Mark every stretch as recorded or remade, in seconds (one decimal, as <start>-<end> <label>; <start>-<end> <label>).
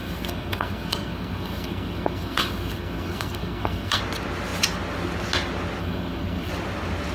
0.0-4.0 remade; 4.0-5.8 recorded; 5.8-6.5 remade; 6.5-7.1 recorded